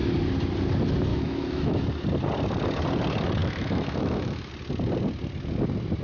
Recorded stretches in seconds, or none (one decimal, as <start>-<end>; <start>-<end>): 0.0-1.1; 1.8-3.4; 4.5-6.0